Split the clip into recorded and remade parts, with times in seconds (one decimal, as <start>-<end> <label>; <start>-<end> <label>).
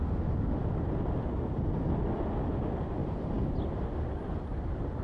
0.0-3.0 recorded; 3.0-3.6 remade; 3.6-5.0 recorded